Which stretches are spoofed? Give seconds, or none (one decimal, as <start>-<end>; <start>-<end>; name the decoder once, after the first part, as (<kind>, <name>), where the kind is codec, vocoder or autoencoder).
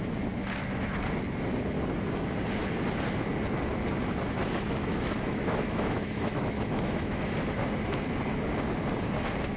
4.4-7.8 (autoencoder, DAC-VAE)